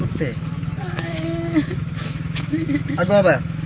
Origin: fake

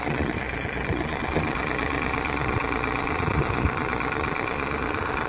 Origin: fake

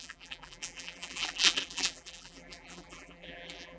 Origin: fake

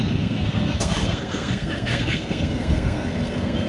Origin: fake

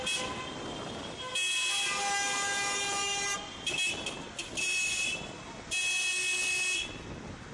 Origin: real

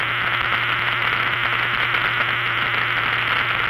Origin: real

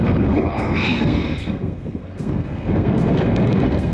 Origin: fake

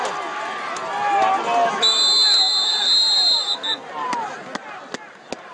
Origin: real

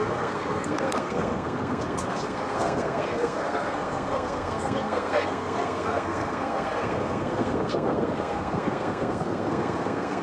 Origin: fake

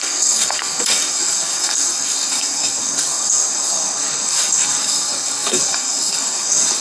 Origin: fake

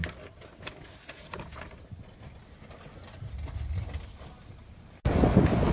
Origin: real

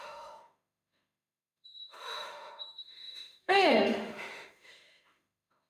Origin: fake